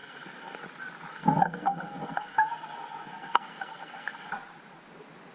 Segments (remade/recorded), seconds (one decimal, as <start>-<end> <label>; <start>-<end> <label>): 0.0-0.6 remade; 0.6-1.1 recorded; 1.1-4.3 remade; 4.3-5.3 recorded